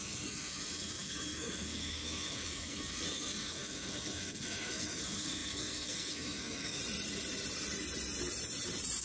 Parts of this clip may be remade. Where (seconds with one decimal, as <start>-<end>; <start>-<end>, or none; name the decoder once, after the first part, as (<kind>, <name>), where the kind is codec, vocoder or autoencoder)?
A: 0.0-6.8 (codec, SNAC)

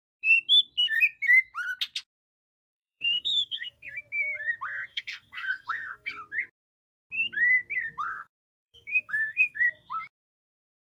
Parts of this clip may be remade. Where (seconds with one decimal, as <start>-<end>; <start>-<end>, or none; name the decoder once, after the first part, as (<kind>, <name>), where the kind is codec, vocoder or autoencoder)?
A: 2.5-4.0 (codec, SNAC); 4.9-6.1; 8.1-9.6

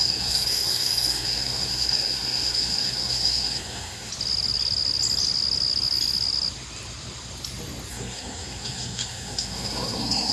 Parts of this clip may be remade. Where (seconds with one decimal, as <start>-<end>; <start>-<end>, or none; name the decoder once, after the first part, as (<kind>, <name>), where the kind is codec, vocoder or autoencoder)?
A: 0.0-4.1 (codec, SNAC); 7.9-10.3

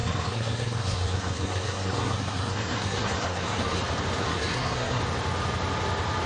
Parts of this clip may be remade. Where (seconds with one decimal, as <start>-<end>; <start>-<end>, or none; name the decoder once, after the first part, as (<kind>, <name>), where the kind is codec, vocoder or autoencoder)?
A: 0.0-3.8 (codec, SNAC); 4.2-5.0

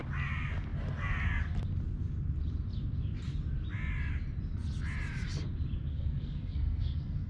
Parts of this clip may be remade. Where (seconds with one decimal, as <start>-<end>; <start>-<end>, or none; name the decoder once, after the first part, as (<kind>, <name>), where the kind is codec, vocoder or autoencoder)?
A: 5.9-7.3 (codec, SNAC)